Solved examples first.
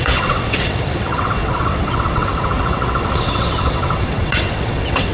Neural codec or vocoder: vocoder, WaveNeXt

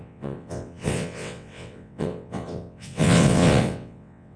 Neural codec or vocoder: vocoder, WaveNeXt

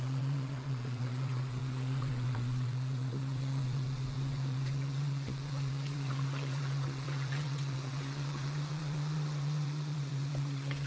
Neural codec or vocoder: vocoder, WaveNeXt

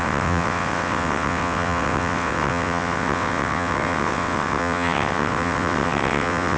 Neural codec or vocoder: vocoder, WaveNeXt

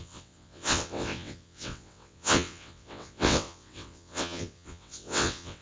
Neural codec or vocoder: vocoder, WaveNeXt